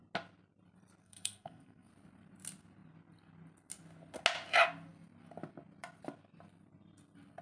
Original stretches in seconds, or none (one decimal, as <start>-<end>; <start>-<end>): 0.0-1.0; 1.9-7.4